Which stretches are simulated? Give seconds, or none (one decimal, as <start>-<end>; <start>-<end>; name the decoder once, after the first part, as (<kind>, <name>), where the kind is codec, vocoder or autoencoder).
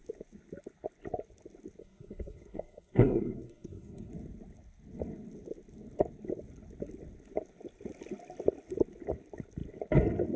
1.8-4.1 (codec, SNAC)